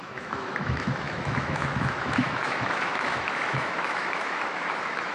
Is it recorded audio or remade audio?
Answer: remade